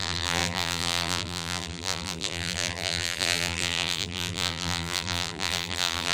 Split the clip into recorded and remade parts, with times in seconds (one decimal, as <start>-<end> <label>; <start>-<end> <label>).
0.0-6.1 remade